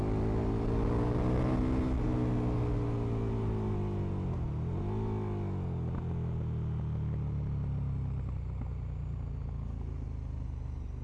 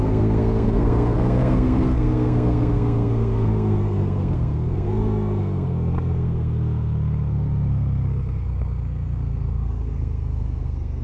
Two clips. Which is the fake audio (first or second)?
second